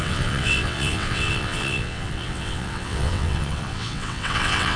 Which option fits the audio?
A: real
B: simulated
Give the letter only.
B